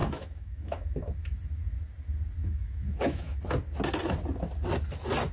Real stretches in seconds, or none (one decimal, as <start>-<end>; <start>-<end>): 1.1-2.4; 3.4-5.3